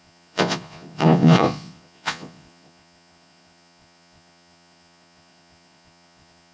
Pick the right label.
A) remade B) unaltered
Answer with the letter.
A